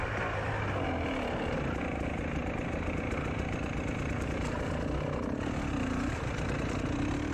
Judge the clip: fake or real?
real